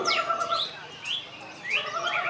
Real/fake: fake